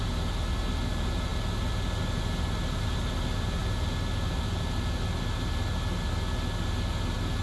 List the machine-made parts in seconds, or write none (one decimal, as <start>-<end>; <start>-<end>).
none